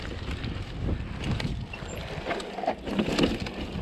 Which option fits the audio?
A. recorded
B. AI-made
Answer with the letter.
A